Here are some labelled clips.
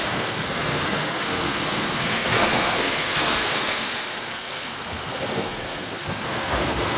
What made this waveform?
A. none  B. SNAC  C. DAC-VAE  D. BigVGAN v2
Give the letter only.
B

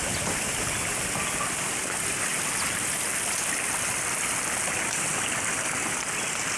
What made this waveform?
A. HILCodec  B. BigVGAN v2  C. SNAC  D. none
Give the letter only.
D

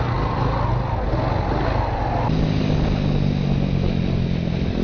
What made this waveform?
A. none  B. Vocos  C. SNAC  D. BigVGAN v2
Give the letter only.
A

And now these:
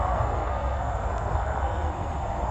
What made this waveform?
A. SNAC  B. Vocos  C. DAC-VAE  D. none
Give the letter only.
A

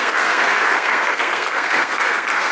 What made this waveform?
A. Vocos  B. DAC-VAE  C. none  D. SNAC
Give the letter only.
D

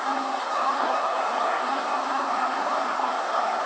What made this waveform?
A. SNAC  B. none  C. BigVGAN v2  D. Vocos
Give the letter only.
A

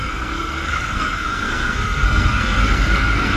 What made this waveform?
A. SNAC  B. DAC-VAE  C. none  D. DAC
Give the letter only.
A